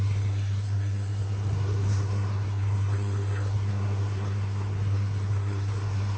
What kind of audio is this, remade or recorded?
remade